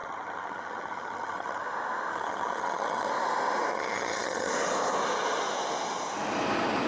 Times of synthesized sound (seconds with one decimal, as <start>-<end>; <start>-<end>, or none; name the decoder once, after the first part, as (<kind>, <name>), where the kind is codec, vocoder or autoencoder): 0.0-1.6 (vocoder, HiFi-GAN); 2.1-3.1; 3.7-4.5

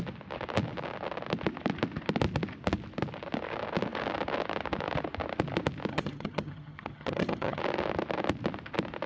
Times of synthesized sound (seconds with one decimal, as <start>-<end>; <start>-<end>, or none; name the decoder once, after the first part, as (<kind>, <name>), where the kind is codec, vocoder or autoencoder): 5.9-7.6 (vocoder, HiFi-GAN)

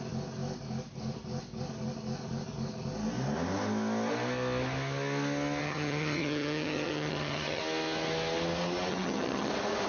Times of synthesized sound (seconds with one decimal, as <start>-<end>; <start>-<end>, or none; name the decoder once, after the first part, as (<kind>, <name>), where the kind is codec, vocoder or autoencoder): 5.6-7.6 (vocoder, HiFi-GAN); 8.9-9.5

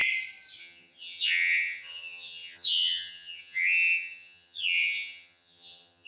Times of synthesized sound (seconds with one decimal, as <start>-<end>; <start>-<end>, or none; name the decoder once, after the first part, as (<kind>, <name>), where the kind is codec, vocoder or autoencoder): 0.6-6.1 (vocoder, HiFi-GAN)

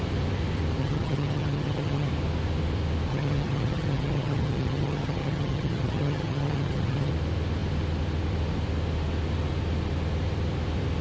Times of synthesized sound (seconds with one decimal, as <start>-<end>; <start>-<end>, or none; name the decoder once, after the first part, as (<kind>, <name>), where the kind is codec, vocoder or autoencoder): 0.8-2.1 (vocoder, HiFi-GAN); 3.1-7.1